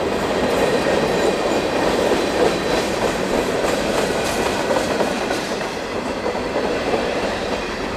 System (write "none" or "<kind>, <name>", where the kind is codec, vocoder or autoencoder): vocoder, BigVGAN v2